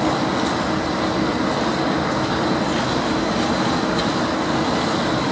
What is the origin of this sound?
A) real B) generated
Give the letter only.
A